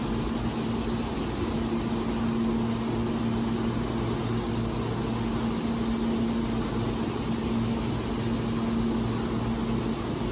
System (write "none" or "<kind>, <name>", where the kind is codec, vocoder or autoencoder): none